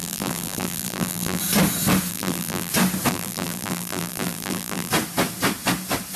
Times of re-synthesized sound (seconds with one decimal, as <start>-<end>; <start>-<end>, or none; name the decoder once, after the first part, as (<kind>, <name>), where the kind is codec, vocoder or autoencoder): 0.0-1.4 (vocoder, BigVGAN v2); 2.1-2.7; 3.1-4.9